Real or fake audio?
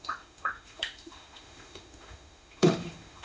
fake